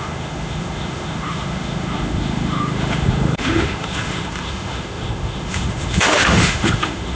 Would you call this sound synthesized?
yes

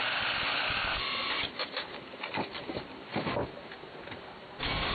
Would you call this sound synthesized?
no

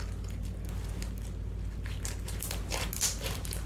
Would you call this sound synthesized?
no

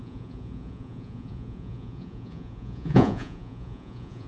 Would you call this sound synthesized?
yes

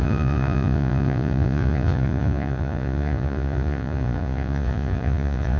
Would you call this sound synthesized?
yes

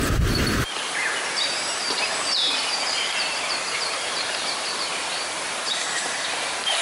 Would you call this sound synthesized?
yes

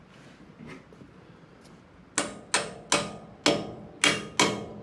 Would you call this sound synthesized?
no